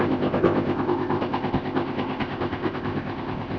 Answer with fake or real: fake